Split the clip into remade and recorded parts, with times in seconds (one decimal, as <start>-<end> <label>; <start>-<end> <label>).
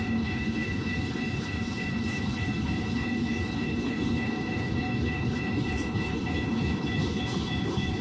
0.0-8.0 remade